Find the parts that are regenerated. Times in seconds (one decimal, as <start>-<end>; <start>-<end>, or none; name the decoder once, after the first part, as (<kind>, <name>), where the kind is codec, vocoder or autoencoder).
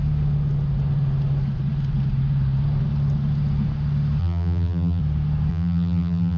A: 4.2-5.0 (vocoder, BigVGAN v2); 5.5-6.4